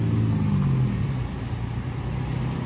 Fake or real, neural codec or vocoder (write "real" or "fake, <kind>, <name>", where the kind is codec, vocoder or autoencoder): real